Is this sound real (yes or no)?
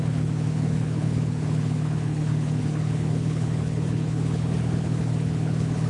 no